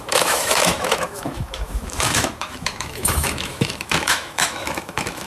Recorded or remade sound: remade